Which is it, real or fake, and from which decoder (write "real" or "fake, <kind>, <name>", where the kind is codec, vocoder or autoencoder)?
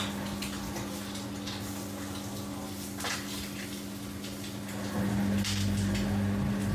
real